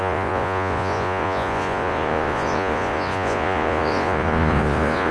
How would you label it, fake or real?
fake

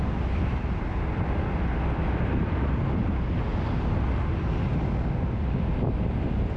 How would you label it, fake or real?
real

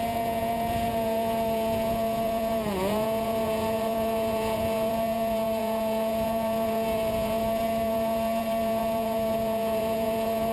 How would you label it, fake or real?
fake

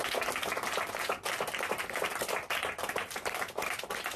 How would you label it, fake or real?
real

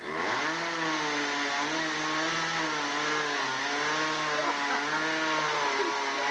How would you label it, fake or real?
real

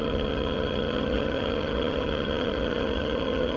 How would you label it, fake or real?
fake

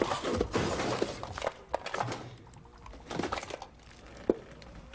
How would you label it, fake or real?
real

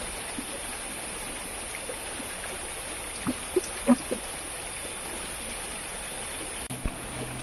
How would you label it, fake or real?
real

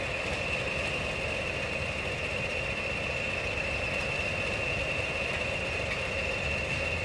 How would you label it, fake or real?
real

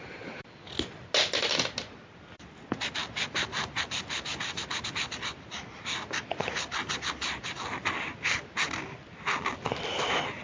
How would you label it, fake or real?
real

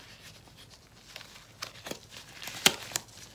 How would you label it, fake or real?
real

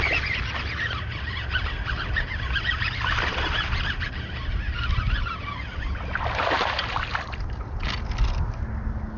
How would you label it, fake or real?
real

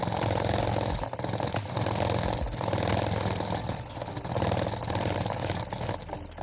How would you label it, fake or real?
real